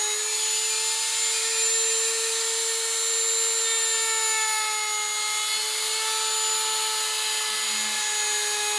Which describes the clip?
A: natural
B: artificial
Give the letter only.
A